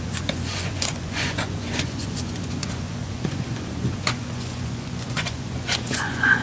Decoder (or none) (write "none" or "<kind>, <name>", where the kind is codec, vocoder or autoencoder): vocoder, Vocos